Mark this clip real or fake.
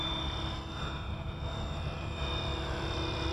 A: fake